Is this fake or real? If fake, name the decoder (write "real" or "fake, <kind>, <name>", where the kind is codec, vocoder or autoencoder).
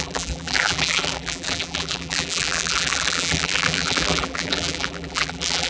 fake, vocoder, BigVGAN v2